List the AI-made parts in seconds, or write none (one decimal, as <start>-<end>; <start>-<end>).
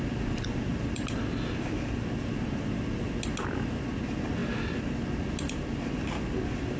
none